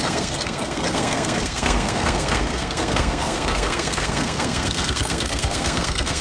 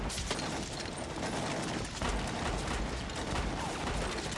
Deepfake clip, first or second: first